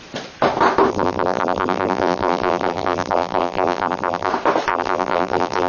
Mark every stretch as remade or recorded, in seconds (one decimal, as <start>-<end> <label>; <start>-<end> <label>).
0.0-0.9 recorded; 0.9-4.3 remade; 4.3-4.7 recorded; 4.7-5.7 remade